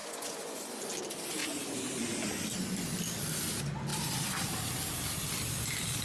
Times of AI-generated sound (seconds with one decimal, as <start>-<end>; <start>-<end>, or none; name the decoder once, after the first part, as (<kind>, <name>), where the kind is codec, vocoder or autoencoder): 0.0-0.8 (vocoder, Vocos)